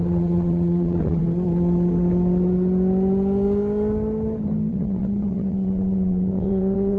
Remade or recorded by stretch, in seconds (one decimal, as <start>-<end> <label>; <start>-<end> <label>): 0.0-1.2 remade; 1.2-4.7 recorded; 4.7-7.0 remade